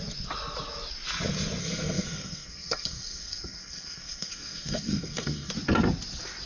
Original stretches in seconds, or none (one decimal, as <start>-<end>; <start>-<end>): 0.0-1.6; 5.5-6.5